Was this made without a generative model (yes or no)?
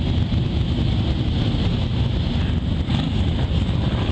yes